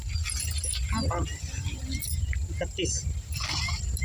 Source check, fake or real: real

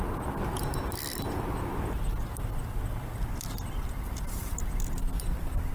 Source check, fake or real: real